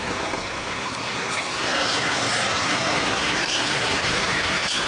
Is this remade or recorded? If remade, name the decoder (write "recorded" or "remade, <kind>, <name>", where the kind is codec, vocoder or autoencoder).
remade, codec, SNAC